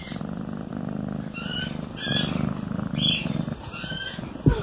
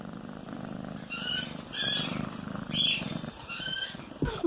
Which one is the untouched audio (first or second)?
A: first